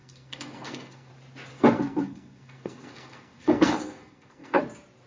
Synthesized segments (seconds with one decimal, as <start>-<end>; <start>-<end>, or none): 0.0-1.1; 1.5-4.6

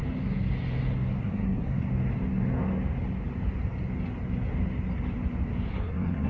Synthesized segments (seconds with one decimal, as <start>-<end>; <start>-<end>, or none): 1.2-1.9; 5.7-6.3

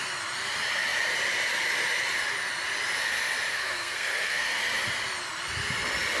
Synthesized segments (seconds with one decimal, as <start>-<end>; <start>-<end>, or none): 3.5-4.6

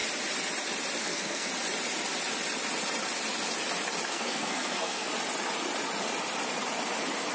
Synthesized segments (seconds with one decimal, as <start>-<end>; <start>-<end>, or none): 1.0-1.5; 4.1-5.1

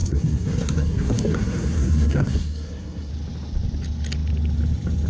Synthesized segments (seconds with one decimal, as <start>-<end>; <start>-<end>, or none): 0.0-3.1

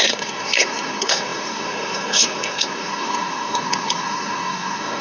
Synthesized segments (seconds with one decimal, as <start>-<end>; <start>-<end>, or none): 0.0-5.0